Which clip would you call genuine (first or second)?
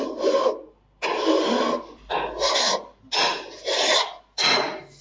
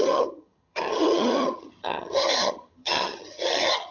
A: first